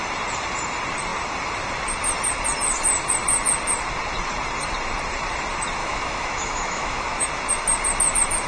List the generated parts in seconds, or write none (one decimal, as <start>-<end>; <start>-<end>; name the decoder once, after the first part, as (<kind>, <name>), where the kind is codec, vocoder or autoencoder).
5.8-7.3 (autoencoder, DAC-VAE)